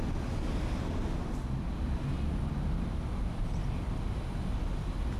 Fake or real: real